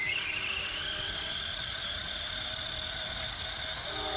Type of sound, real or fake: real